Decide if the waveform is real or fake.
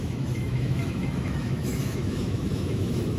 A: fake